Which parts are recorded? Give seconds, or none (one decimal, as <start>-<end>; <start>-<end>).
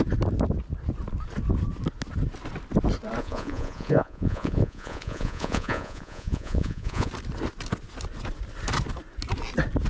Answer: 0.0-3.2; 7.1-9.9